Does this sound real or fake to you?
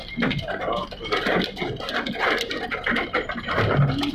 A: real